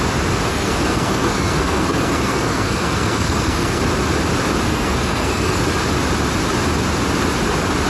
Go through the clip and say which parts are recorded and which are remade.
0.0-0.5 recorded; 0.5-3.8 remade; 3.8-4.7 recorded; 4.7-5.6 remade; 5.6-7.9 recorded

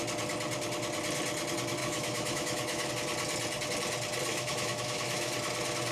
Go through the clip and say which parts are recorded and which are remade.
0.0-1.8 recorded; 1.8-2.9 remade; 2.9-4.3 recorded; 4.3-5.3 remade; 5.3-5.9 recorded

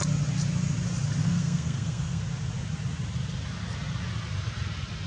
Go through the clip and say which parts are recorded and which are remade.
0.0-1.2 recorded; 1.2-2.2 remade; 2.2-5.1 recorded

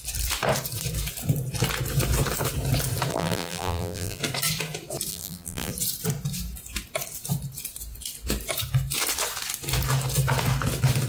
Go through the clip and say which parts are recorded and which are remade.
0.0-3.1 recorded; 3.1-4.2 remade; 4.2-5.1 recorded; 5.1-5.7 remade; 5.7-11.1 recorded

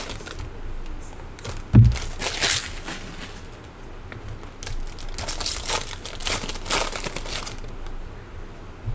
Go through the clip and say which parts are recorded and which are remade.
0.0-8.9 recorded

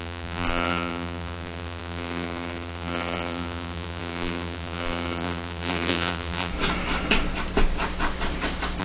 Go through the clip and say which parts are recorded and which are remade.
0.0-6.5 remade; 6.5-8.8 recorded

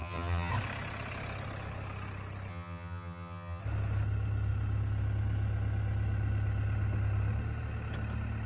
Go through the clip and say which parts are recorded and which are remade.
0.0-0.5 remade; 0.5-2.5 recorded; 2.5-3.6 remade; 3.6-8.5 recorded

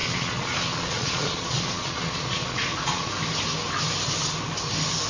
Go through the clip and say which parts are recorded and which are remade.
0.0-3.1 remade; 3.1-5.1 recorded